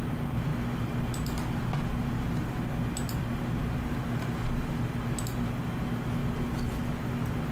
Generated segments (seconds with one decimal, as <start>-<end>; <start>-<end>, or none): none